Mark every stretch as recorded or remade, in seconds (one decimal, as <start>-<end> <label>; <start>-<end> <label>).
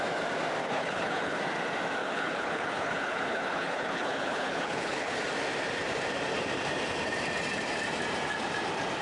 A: 0.0-0.6 recorded; 0.6-1.4 remade; 1.4-2.0 recorded; 2.0-5.2 remade; 5.2-9.0 recorded